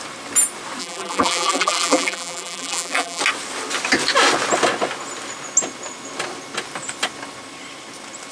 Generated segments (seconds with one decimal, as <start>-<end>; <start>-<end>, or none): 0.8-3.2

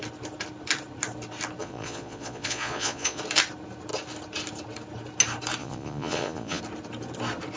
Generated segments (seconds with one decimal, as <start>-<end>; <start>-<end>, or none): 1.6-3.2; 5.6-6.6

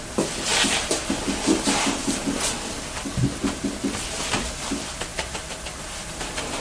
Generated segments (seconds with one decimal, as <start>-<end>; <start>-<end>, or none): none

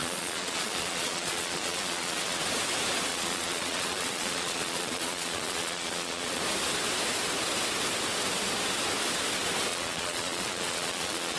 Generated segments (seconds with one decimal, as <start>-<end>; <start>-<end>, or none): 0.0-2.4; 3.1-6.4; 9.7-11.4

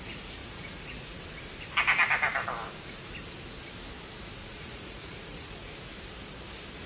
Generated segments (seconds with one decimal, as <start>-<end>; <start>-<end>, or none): 0.4-1.2; 4.4-5.7

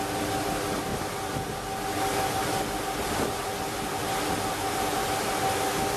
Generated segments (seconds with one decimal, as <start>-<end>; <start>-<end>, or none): none

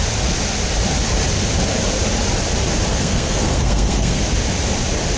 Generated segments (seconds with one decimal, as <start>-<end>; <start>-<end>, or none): 2.9-4.2

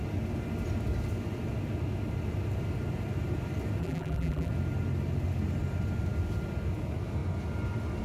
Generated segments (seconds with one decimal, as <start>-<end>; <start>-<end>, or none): 3.8-4.5